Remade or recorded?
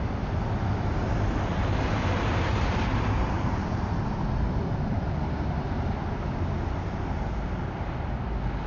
recorded